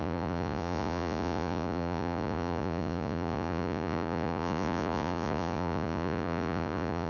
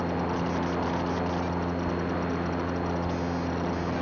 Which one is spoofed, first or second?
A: first